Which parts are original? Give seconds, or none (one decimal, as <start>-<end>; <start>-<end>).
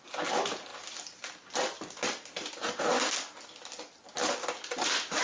0.0-5.2